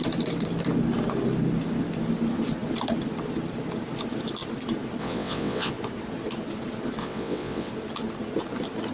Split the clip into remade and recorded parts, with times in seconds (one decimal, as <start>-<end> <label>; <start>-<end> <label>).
0.0-5.0 recorded; 5.0-5.7 remade; 5.7-7.0 recorded; 7.0-7.7 remade; 7.7-8.9 recorded